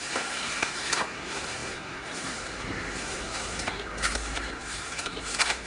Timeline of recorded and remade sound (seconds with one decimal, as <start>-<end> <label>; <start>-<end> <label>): 0.0-5.7 remade